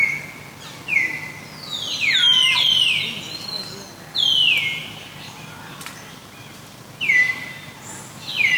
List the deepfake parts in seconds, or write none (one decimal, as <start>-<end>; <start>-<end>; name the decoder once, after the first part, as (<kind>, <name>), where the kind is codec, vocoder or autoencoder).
4.8-6.8 (vocoder, BigVGAN v2); 7.2-8.0